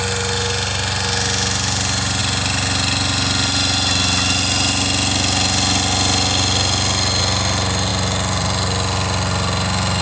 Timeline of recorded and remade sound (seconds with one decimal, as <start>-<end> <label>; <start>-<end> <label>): 0.0-10.0 recorded